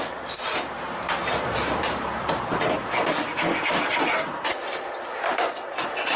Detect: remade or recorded remade